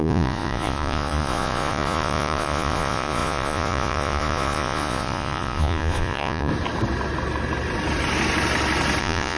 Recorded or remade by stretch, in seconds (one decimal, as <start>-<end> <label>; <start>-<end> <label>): 0.0-6.5 remade; 6.5-9.0 recorded; 9.0-9.4 remade